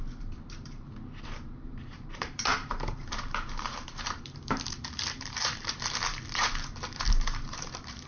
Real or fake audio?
fake